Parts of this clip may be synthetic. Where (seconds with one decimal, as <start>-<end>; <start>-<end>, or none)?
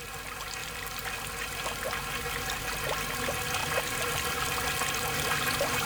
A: 0.6-1.2; 3.6-4.8